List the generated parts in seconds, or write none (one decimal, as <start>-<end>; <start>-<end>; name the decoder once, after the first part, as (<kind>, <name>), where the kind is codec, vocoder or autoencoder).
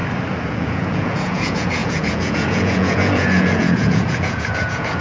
0.5-5.0 (vocoder, Vocos)